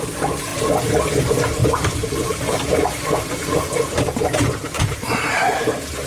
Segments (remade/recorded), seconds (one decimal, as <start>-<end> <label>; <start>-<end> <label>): 0.0-0.5 remade; 0.5-1.2 recorded; 1.2-6.1 remade